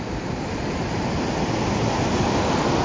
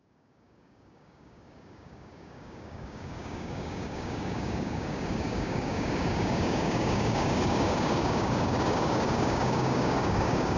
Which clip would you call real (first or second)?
first